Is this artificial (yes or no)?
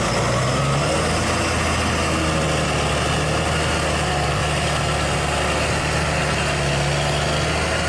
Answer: no